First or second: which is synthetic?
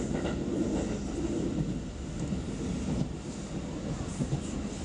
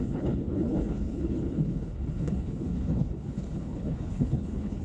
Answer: second